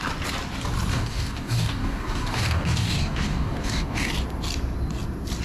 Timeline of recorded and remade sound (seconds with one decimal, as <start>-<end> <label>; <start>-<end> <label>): 0.0-0.9 recorded; 0.9-4.1 remade; 4.1-5.4 recorded